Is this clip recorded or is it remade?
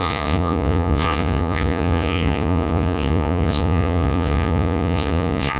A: remade